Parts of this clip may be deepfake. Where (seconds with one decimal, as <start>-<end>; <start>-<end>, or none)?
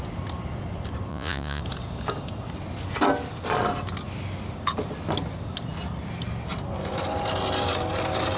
1.1-1.6